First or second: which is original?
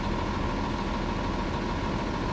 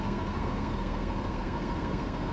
first